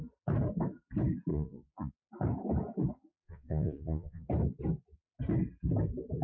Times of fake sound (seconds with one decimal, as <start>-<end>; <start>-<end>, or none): 1.3-1.9; 3.1-4.3